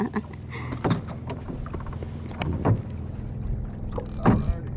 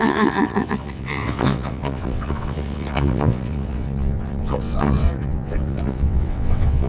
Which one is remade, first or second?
second